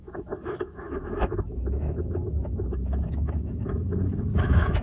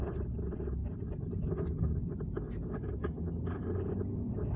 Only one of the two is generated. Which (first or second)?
first